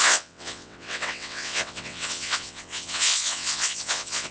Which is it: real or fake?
fake